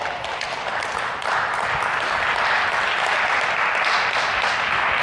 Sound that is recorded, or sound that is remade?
recorded